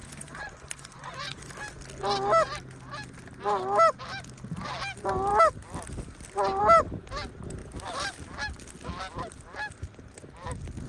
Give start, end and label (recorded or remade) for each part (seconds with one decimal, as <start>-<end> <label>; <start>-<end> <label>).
0.0-1.5 remade; 1.5-10.9 recorded